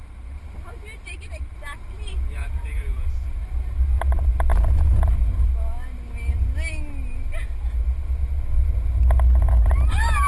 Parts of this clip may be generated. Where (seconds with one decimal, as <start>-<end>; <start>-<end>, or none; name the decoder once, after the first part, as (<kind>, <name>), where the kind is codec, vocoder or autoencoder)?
2.4-3.4 (vocoder, Vocos); 4.5-5.5